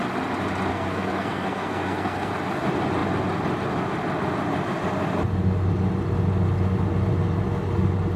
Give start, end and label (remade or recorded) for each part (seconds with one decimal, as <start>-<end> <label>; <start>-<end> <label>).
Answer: 0.0-0.7 recorded; 0.7-2.3 remade; 2.3-8.2 recorded